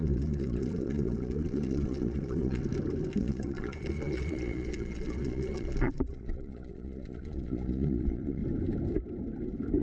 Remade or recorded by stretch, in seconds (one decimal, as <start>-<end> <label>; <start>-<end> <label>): 0.0-2.6 remade; 2.6-3.2 recorded; 3.2-8.4 remade; 8.4-9.8 recorded